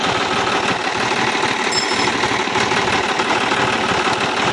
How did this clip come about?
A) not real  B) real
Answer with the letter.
B